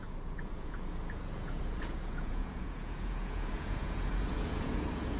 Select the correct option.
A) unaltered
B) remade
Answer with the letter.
B